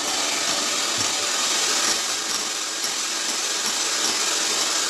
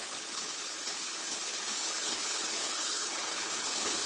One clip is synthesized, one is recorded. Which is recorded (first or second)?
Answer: first